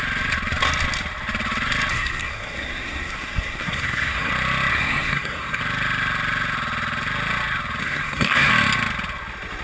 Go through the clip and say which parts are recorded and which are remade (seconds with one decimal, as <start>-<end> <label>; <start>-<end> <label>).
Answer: 0.0-1.9 recorded; 1.9-4.3 remade; 4.3-4.7 recorded; 4.7-5.6 remade; 5.6-7.8 recorded; 7.8-8.5 remade; 8.5-9.6 recorded